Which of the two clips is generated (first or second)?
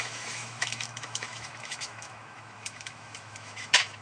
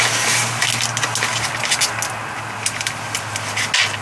first